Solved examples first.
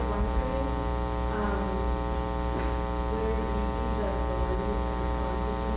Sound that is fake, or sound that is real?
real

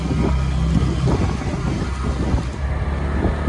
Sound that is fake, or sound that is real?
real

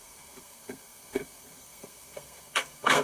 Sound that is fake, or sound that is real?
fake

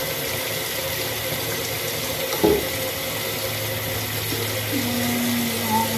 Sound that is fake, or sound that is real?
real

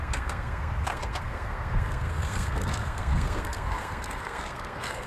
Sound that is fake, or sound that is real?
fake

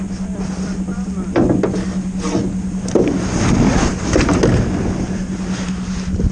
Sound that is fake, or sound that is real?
real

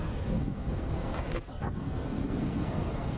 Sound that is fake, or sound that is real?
fake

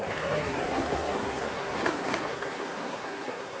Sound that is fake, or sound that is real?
fake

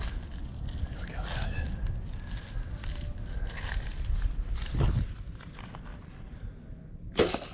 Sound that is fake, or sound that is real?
real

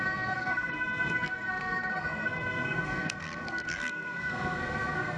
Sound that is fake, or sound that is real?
fake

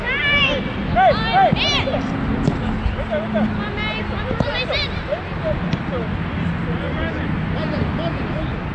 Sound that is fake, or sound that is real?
real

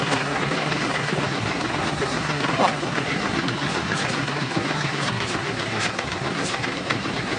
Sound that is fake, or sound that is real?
fake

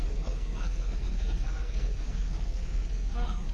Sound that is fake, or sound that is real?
fake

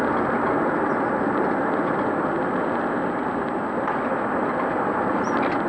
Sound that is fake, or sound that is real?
real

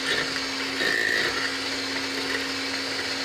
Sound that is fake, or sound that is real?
real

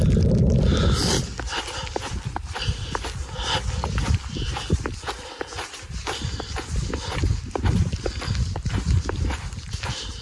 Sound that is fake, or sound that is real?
real